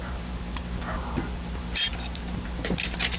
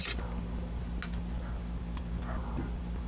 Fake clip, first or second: first